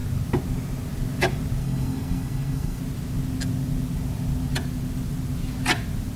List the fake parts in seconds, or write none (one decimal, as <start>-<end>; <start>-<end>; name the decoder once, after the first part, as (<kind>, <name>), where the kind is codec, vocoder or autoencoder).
1.6-2.8 (codec, SNAC)